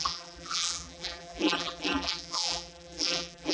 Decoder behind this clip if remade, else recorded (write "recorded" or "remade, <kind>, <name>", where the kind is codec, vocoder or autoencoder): remade, vocoder, BigVGAN v2